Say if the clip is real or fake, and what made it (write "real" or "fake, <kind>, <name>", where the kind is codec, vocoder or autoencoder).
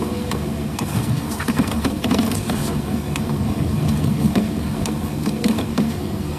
fake, codec, SNAC